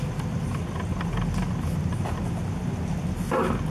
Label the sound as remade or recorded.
recorded